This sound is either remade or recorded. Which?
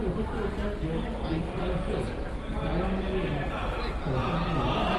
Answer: recorded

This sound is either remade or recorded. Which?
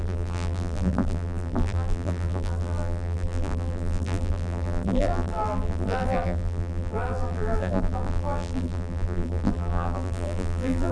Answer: remade